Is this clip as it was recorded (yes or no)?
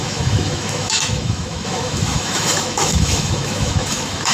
no